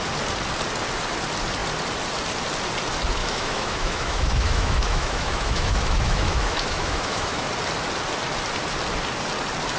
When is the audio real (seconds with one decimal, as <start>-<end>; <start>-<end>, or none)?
0.0-3.2; 7.5-9.8